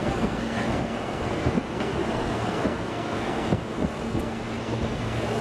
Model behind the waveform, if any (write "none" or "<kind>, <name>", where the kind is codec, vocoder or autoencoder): codec, SNAC